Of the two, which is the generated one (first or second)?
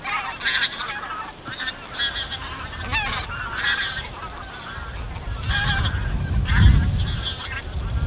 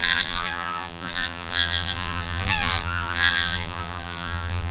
second